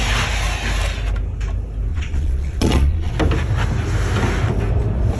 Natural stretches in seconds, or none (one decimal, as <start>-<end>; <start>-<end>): 0.0-1.9; 3.1-5.2